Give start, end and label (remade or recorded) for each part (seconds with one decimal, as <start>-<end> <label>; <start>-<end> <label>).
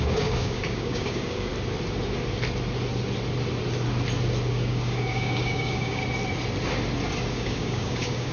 0.0-1.5 remade; 1.5-4.5 recorded; 4.5-6.0 remade; 6.0-7.3 recorded; 7.3-8.3 remade